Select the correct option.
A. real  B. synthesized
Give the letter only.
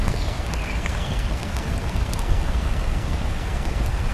B